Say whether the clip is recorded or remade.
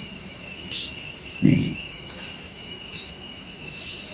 remade